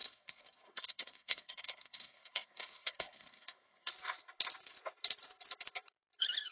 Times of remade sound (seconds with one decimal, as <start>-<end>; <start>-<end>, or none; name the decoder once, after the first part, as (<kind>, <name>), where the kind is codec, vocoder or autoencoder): 0.0-3.9 (codec, SNAC)